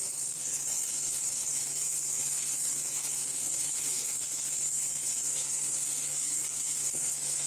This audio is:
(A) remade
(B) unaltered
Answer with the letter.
A